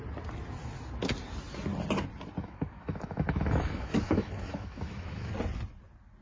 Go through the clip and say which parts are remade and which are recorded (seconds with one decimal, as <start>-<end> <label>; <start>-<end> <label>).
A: 0.0-2.4 recorded; 2.4-5.3 remade; 5.3-6.2 recorded